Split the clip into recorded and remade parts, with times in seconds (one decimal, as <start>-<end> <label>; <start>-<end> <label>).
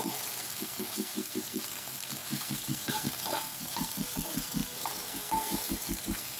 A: 0.0-6.4 remade